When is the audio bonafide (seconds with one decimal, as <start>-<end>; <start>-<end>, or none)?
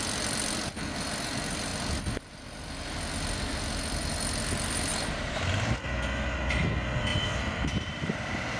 0.0-4.9; 5.5-7.1; 8.1-8.6